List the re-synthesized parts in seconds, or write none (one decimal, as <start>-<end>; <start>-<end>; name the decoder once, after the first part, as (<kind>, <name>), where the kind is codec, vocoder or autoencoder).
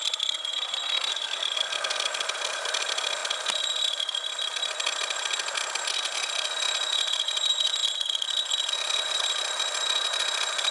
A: none